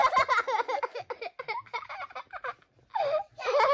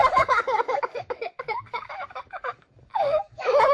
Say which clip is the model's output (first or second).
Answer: second